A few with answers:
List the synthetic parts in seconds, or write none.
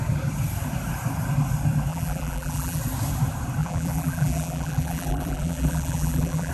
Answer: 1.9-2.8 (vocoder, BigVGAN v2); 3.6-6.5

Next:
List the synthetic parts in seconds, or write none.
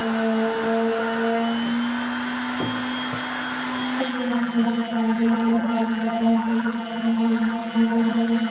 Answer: 4.0-8.5 (vocoder, BigVGAN v2)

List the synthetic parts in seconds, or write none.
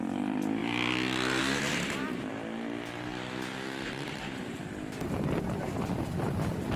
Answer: none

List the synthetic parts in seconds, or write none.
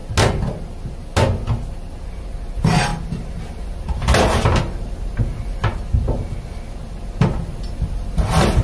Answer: none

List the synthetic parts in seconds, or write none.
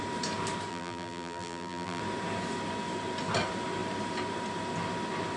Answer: 0.7-2.0 (vocoder, BigVGAN v2)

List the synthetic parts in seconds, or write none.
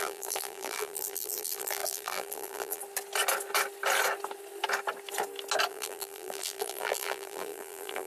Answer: 0.0-2.8 (vocoder, BigVGAN v2); 5.7-8.1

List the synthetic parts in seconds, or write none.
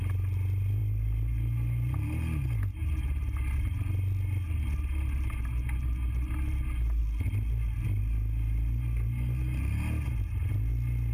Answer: none